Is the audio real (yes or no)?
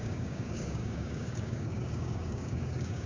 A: no